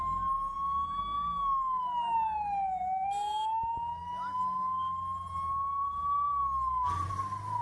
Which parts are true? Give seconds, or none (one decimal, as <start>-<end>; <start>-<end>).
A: 0.0-7.6